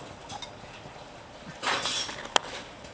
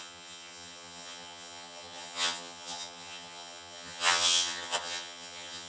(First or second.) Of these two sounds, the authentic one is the first